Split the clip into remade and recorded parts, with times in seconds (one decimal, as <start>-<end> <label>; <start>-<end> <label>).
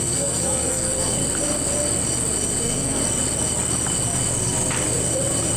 0.0-1.2 remade; 1.2-2.6 recorded; 2.6-3.0 remade; 3.0-5.6 recorded